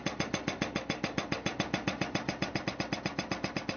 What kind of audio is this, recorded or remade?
recorded